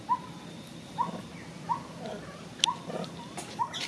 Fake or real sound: real